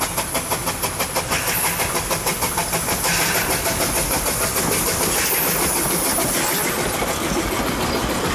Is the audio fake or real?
real